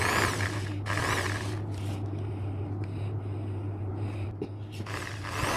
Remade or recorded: recorded